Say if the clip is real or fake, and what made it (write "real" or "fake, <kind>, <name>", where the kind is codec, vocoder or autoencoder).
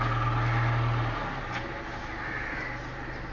real